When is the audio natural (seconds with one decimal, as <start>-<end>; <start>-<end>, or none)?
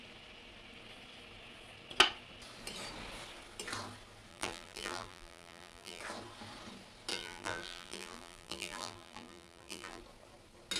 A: 0.0-4.3; 6.0-7.1; 10.0-10.8